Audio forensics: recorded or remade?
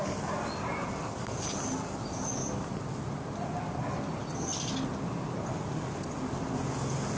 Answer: recorded